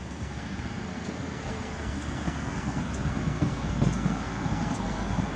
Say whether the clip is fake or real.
fake